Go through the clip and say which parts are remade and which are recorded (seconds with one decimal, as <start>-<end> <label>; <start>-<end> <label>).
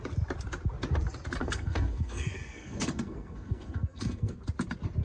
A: 0.0-1.4 recorded; 1.4-4.4 remade; 4.4-5.0 recorded